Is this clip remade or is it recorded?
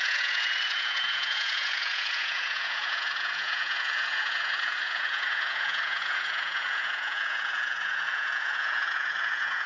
remade